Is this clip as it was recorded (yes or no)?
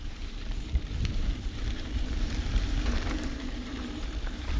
no